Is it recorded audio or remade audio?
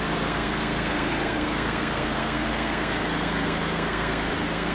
remade